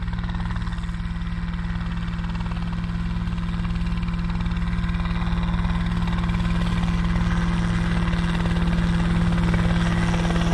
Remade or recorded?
recorded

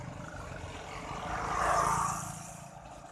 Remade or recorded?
recorded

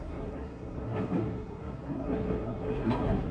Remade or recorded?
remade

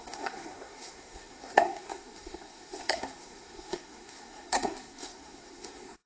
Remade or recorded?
remade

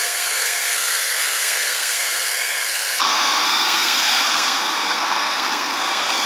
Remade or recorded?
remade